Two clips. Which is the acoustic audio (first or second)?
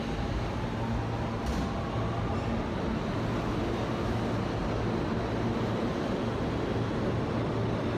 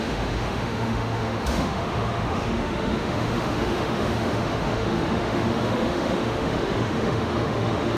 first